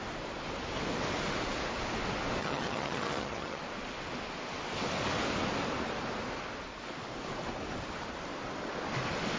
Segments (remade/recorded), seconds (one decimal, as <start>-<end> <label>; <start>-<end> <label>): 0.0-2.4 recorded; 2.4-3.6 remade; 3.6-9.4 recorded